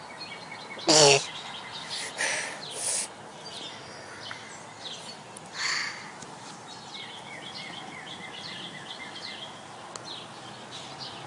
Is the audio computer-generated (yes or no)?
no